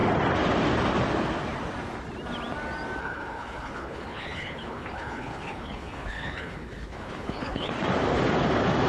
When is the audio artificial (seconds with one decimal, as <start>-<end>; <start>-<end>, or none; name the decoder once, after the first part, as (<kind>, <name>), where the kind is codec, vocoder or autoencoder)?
3.0-7.7 (codec, HILCodec)